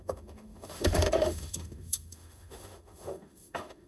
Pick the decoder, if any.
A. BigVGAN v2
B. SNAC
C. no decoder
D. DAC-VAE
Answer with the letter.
D